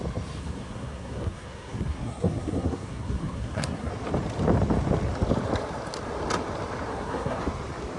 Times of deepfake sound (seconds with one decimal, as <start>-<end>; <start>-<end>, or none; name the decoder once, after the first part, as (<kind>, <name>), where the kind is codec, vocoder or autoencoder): 0.4-3.9 (codec, SNAC); 6.9-7.4